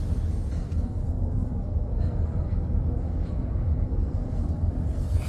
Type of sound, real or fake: fake